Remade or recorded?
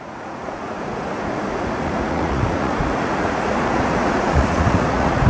remade